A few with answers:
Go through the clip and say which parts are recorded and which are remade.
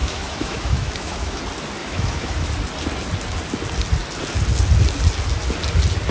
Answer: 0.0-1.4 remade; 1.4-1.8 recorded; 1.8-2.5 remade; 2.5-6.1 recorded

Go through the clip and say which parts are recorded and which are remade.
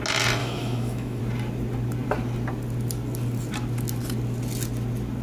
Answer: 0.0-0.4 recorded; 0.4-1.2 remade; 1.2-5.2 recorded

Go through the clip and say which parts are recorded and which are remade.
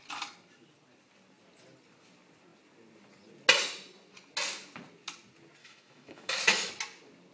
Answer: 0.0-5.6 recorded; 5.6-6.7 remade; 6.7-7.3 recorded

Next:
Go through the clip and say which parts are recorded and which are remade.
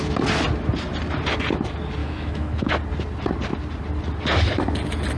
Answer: 0.0-2.0 recorded; 2.0-2.7 remade; 2.7-5.2 recorded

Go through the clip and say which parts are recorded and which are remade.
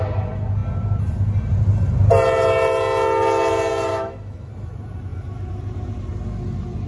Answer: 0.0-3.9 recorded; 3.9-4.5 remade; 4.5-6.9 recorded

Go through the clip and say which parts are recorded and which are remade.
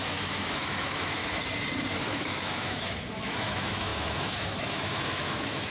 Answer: 0.0-1.2 remade; 1.2-1.9 recorded; 1.9-5.7 remade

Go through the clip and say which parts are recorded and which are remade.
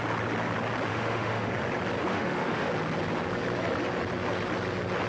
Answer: 0.0-0.9 recorded; 0.9-1.5 remade; 1.5-2.1 recorded; 2.1-2.7 remade; 2.7-5.1 recorded